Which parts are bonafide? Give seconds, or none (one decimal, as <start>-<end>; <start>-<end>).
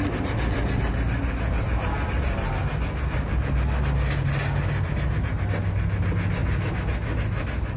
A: 0.0-7.8